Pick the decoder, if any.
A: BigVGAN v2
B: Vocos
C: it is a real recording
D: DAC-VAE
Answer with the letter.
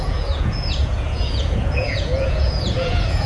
B